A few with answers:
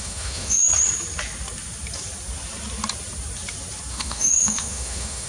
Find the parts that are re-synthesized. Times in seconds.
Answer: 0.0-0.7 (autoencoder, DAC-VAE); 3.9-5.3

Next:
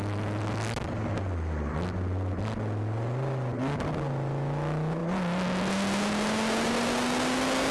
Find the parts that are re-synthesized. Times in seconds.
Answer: none

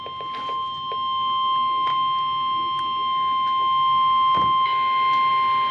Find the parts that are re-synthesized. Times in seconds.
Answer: none

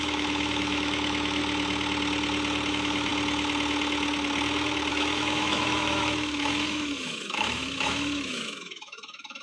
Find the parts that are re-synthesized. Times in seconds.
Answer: 0.0-1.4 (autoencoder, DAC-VAE); 2.7-3.1; 4.9-9.4